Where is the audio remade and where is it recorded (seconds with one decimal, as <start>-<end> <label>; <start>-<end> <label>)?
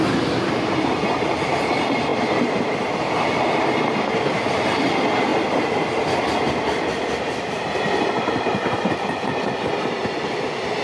0.0-10.8 recorded